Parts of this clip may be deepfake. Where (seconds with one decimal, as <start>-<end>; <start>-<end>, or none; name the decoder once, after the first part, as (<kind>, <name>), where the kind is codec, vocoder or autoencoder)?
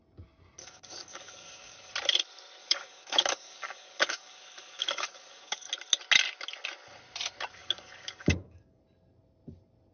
0.6-1.9 (codec, DAC); 2.6-5.7; 7.6-8.8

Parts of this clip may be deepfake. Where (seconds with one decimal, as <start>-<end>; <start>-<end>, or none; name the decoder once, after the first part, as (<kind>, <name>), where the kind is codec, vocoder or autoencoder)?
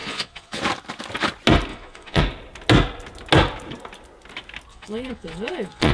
0.0-0.6 (vocoder, Vocos); 1.7-2.2; 4.7-5.9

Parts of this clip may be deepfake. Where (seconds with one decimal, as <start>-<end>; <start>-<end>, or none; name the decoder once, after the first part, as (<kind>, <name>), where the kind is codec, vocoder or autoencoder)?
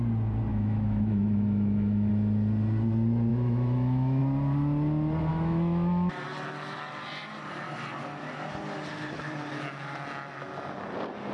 0.5-2.1 (autoencoder, DAC-VAE); 3.3-4.2; 5.3-6.1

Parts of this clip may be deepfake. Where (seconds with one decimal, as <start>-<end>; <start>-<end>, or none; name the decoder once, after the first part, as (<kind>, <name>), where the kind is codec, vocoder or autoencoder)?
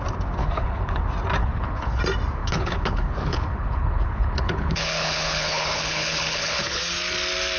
0.4-1.0 (codec, HILCodec); 1.4-2.0; 2.4-6.8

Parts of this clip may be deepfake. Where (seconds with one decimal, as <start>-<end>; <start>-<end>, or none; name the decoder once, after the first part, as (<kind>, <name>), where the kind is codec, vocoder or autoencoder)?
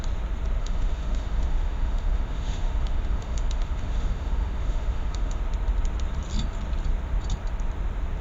0.6-5.4 (autoencoder, DAC-VAE)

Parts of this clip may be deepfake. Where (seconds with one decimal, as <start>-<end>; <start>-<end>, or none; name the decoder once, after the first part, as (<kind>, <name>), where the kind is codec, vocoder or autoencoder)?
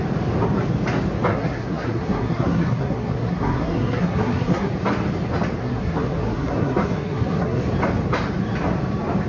1.3-4.7 (codec, SNAC); 5.6-7.6